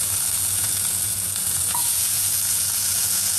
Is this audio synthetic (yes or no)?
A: yes